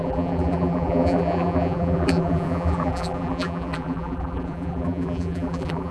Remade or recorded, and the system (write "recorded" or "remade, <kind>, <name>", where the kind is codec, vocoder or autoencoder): remade, vocoder, BigVGAN v2